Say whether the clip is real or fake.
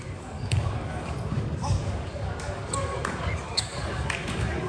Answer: fake